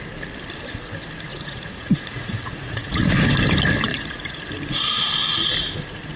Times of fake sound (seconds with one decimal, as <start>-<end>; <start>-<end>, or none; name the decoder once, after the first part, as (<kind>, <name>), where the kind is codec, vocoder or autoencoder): 1.3-3.0 (vocoder, Vocos); 3.9-4.4